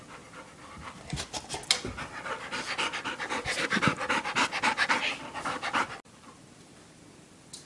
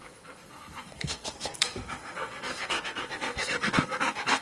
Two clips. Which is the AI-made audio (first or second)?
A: second